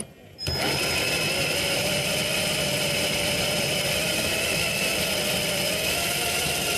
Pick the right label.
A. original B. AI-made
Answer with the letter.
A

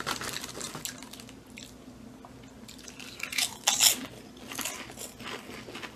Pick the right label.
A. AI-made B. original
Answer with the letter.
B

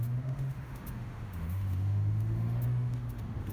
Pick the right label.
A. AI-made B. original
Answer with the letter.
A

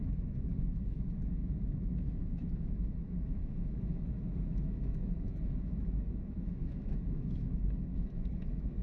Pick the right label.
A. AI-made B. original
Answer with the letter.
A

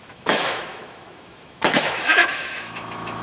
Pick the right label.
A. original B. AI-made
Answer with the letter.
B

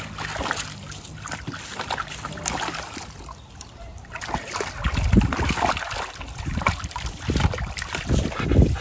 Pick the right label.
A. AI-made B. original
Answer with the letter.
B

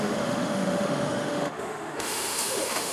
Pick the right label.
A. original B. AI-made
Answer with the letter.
B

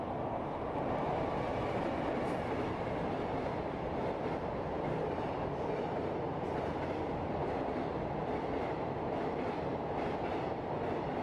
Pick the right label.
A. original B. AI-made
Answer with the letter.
A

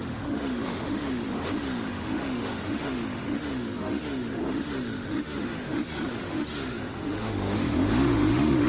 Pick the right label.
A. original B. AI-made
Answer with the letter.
B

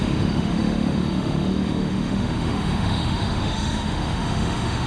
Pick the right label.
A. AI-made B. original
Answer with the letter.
A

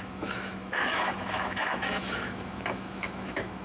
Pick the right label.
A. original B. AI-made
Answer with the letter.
B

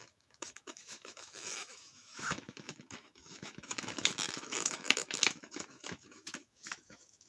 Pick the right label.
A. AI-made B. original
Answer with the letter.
A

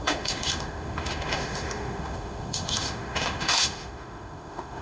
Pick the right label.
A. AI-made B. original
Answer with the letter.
A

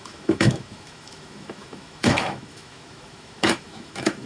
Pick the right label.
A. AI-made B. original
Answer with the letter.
A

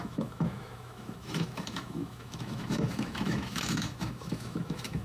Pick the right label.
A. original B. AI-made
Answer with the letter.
B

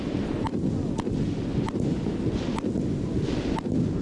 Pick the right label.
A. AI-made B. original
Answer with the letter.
B